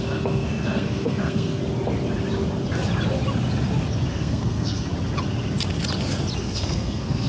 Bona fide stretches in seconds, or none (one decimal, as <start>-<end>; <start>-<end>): 1.6-4.1; 4.9-6.4